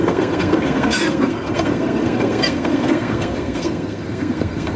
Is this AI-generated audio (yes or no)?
yes